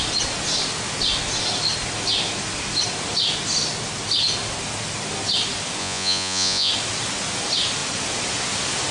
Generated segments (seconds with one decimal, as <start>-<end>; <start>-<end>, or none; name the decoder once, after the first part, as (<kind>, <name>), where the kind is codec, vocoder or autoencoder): 5.8-6.7 (vocoder, Vocos)